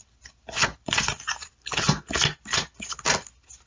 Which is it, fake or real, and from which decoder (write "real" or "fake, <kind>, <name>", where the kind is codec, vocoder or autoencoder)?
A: real